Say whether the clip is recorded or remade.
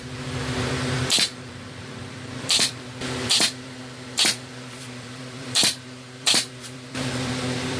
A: remade